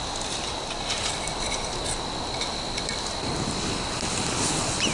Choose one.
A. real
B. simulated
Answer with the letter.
A